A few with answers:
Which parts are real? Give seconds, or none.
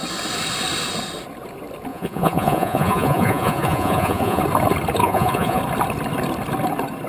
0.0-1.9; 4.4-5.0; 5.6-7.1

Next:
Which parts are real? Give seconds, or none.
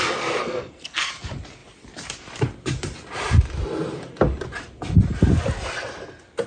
0.0-0.4; 1.1-6.5